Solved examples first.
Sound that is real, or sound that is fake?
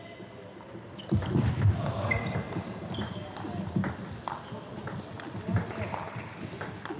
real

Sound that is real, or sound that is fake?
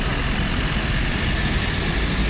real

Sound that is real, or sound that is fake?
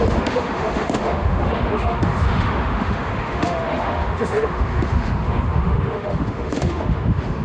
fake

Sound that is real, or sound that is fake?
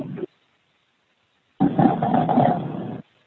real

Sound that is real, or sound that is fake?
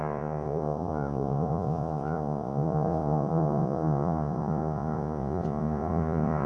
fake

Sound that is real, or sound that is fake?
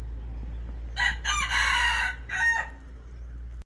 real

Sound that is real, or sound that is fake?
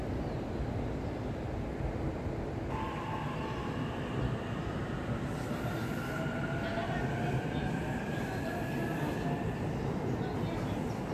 real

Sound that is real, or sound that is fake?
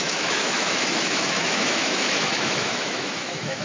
fake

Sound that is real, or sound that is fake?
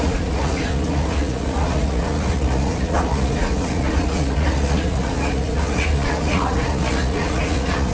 fake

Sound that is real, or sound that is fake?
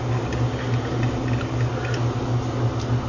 real